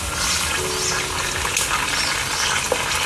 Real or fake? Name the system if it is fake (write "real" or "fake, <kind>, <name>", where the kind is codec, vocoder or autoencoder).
real